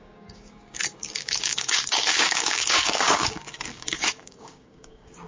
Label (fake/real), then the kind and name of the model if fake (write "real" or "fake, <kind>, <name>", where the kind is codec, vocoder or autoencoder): fake, codec, DAC